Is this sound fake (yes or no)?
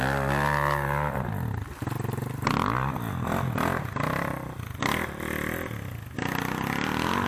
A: no